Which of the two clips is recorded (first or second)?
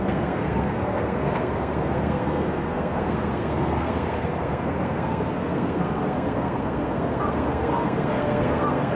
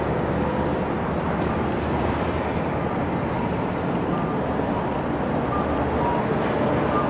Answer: second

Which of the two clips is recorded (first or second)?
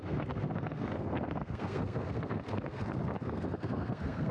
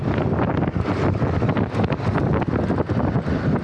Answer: second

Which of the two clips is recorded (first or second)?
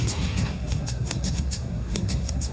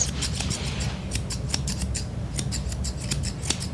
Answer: second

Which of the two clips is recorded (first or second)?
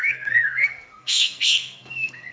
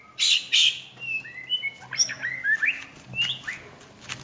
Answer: second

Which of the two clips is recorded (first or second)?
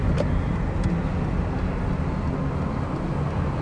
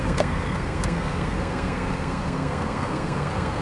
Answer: first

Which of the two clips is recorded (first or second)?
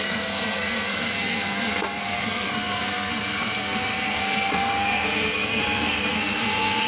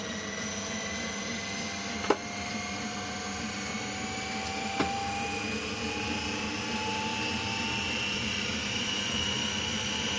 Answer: second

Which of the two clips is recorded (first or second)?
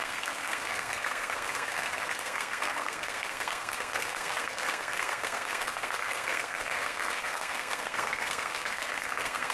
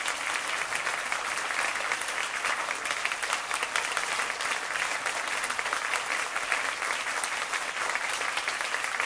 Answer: second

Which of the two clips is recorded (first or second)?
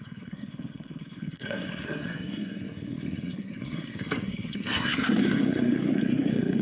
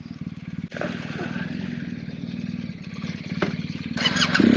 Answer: second